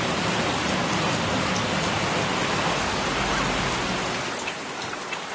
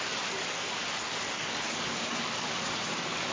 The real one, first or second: first